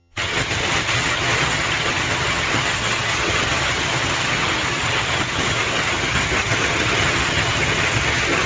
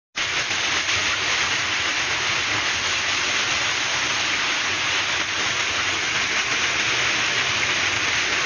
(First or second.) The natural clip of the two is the second